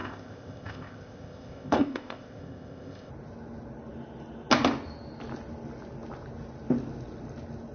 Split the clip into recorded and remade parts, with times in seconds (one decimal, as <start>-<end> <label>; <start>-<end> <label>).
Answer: 0.0-3.1 remade; 3.1-7.7 recorded

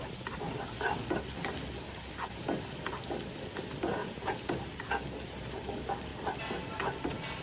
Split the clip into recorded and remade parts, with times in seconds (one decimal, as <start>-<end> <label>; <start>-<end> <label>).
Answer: 0.0-4.0 recorded; 4.0-4.5 remade; 4.5-7.4 recorded

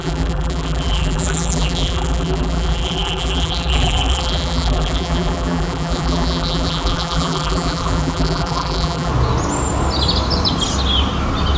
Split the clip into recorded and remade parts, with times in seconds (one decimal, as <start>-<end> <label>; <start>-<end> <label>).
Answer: 0.0-9.1 remade; 9.1-11.6 recorded